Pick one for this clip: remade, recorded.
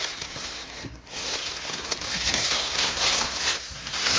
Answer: remade